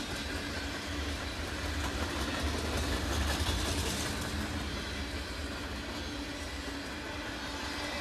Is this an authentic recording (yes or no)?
yes